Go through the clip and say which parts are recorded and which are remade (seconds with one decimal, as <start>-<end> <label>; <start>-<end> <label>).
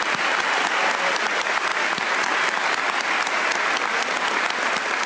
0.0-5.1 recorded